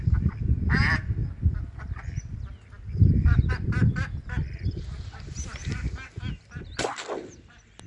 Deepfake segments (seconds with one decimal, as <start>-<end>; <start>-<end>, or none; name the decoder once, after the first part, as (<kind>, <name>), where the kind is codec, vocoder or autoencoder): none